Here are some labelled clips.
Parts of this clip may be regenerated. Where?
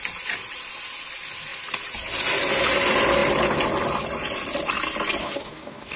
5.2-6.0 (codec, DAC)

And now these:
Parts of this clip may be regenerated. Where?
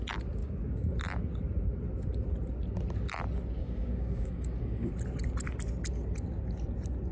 0.4-0.9 (codec, DAC); 3.6-4.9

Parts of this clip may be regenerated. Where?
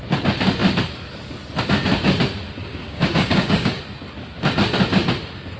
2.6-3.8 (codec, DAC)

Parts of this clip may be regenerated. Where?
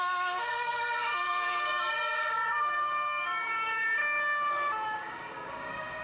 0.0-4.0 (codec, DAC); 4.5-6.0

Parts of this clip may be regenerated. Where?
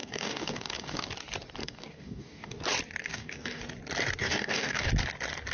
0.0-1.1 (codec, DAC); 1.6-2.6; 3.0-3.6; 4.2-4.9